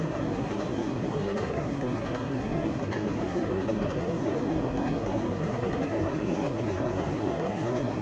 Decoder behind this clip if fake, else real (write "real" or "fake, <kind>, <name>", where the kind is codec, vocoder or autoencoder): fake, codec, SNAC